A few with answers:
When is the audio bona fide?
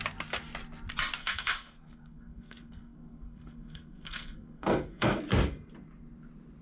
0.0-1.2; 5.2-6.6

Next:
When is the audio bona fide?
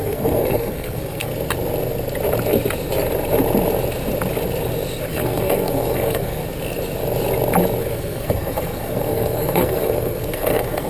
1.3-5.1; 6.4-7.8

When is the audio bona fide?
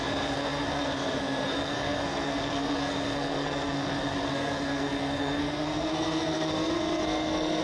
none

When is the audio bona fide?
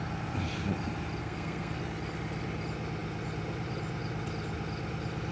0.0-1.2; 1.8-5.3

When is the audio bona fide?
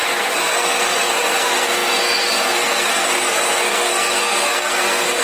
none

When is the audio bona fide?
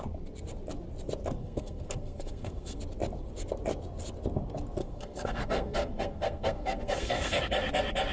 0.0-1.4; 2.8-4.8; 7.4-8.1